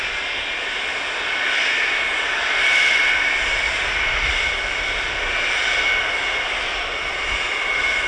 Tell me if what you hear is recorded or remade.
recorded